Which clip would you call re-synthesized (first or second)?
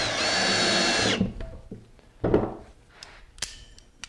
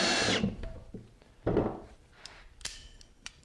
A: second